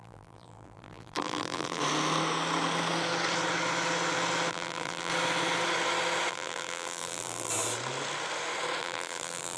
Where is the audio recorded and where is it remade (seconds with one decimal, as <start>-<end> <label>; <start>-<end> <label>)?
0.0-1.8 remade; 1.8-4.5 recorded; 4.5-5.1 remade; 5.1-6.3 recorded; 6.3-7.5 remade; 7.5-8.8 recorded; 8.8-9.6 remade